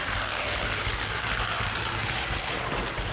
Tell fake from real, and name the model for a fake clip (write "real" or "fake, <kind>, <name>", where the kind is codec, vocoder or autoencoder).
real